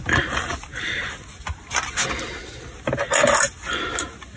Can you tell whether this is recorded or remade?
recorded